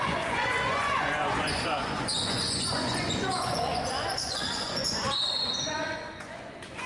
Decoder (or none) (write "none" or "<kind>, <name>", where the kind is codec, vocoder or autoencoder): vocoder, Vocos